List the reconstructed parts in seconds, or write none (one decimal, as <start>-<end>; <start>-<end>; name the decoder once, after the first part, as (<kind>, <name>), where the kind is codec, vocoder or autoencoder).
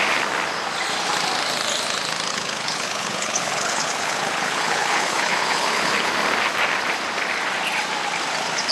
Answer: 2.3-6.1 (codec, HILCodec)